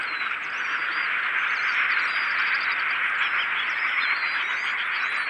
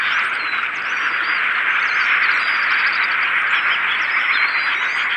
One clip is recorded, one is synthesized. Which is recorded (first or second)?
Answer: first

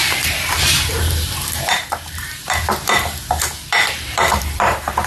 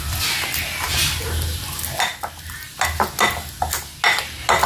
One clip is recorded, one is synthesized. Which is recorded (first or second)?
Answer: second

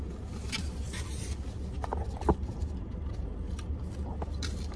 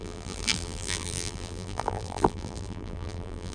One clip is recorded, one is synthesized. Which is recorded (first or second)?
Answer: first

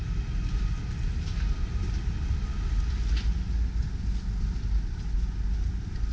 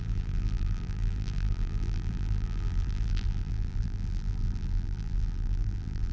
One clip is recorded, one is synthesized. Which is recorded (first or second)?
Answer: first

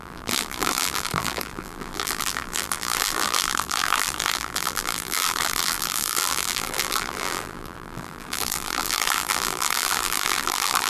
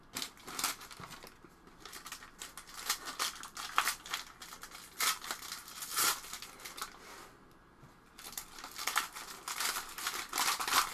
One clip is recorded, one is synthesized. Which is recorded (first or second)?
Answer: second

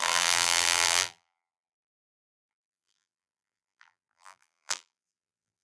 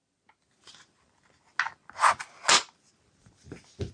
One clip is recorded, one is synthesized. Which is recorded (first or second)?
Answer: second